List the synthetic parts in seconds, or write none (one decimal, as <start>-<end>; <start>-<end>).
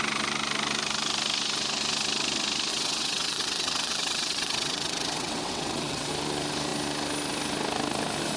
2.7-6.1